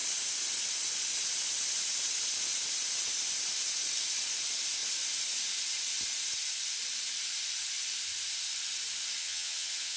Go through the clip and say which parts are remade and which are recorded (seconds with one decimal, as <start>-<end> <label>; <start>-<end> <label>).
0.0-9.2 recorded; 9.2-10.0 remade